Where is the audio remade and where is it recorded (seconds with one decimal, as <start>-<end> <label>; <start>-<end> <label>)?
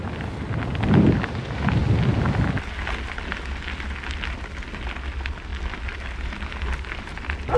0.0-7.6 recorded